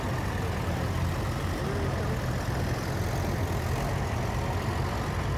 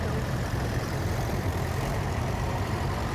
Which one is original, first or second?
first